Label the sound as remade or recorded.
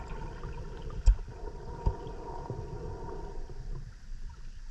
recorded